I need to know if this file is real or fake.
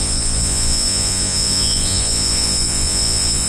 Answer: fake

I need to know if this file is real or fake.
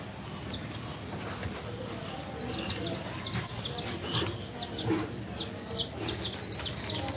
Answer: real